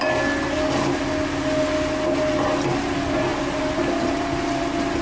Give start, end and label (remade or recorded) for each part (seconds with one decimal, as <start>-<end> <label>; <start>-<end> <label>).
0.0-3.3 recorded; 3.3-4.6 remade; 4.6-5.0 recorded